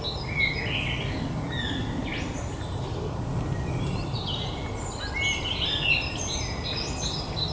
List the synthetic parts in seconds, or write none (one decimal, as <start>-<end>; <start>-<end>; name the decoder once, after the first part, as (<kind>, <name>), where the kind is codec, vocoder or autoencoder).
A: none

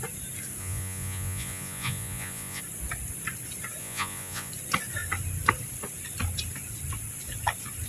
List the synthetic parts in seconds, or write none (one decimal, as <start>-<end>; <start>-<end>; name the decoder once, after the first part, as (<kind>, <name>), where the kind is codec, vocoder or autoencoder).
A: 0.6-2.6 (vocoder, Vocos); 3.8-4.5

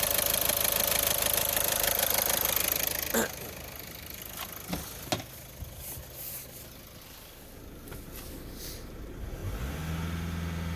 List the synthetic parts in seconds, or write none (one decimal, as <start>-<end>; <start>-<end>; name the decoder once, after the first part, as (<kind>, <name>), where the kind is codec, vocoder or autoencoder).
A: none

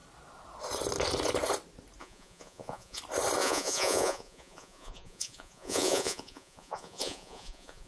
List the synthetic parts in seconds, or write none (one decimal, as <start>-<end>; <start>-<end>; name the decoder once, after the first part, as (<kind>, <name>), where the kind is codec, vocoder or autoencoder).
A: 2.0-3.0 (vocoder, Vocos); 3.4-7.9